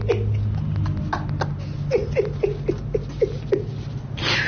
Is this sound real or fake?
real